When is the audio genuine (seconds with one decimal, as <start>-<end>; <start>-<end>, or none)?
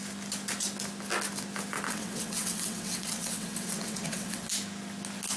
0.0-1.9; 4.5-5.4